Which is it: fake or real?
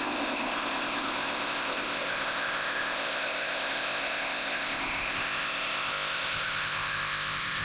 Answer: fake